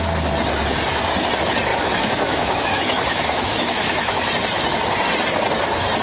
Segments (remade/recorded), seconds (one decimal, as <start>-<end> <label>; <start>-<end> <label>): 0.0-1.7 recorded; 1.7-4.3 remade; 4.3-6.0 recorded